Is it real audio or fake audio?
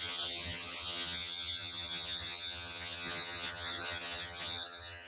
fake